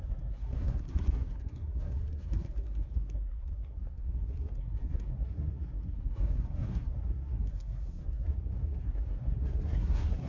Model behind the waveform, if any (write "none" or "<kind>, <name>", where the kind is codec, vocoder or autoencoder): codec, SNAC